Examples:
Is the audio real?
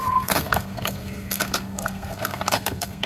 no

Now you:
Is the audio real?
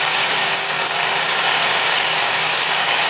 no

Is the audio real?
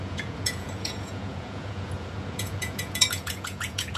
no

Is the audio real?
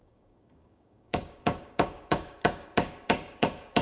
no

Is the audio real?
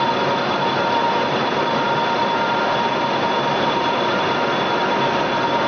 yes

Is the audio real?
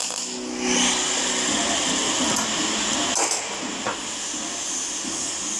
yes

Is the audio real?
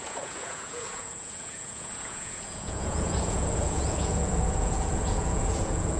no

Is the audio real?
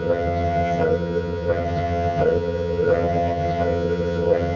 no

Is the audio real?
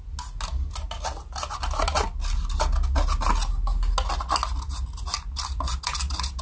yes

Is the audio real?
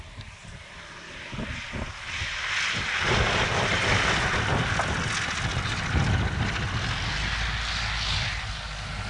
yes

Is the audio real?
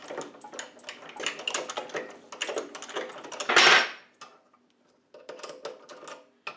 yes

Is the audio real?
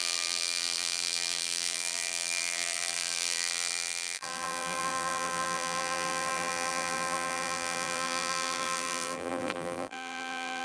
no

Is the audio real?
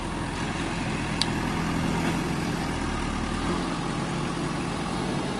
yes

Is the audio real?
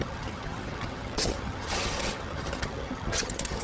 no